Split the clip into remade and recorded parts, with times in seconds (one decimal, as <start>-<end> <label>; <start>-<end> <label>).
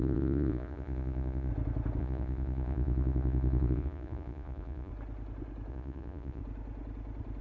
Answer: 0.0-1.5 remade; 1.5-2.0 recorded; 2.0-4.9 remade; 4.9-5.7 recorded; 5.7-6.4 remade; 6.4-7.4 recorded